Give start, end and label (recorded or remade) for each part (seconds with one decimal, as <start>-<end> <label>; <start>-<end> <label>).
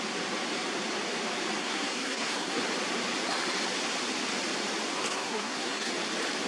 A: 0.0-1.6 recorded; 1.6-2.6 remade; 2.6-5.1 recorded; 5.1-5.9 remade; 5.9-6.5 recorded